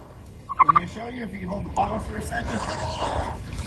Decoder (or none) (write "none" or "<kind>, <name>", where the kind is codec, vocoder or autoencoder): codec, HILCodec